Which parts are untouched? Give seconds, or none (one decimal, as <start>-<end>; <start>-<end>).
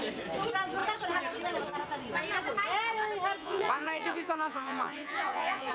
0.0-3.4